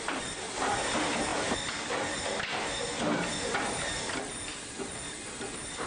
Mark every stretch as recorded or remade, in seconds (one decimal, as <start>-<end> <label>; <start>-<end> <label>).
0.0-5.9 recorded